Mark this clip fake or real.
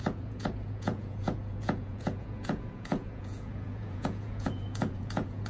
fake